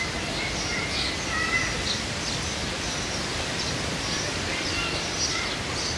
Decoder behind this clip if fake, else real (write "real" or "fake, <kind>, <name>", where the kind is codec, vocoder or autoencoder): real